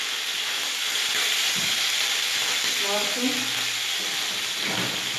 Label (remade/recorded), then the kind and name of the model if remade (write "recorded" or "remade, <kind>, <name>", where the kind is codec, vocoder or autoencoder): recorded